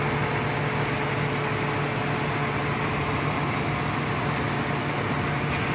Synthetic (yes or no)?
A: no